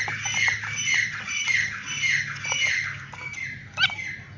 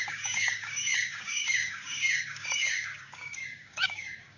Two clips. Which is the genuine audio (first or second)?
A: first